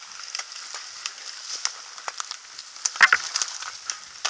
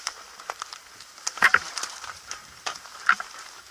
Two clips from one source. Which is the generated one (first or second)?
second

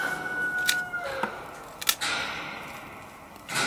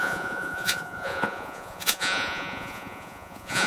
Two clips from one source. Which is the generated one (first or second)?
second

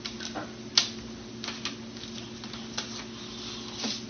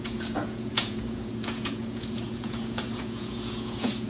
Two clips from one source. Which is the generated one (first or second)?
second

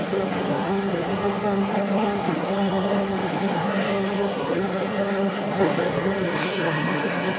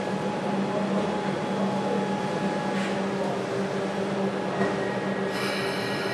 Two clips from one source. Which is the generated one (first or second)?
first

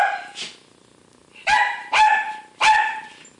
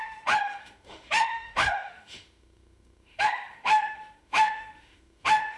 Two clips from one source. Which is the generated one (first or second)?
second